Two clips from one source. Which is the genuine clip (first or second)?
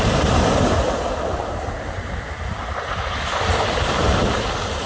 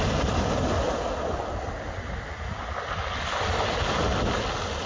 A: second